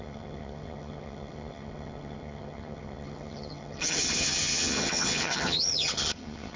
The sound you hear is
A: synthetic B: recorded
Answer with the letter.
A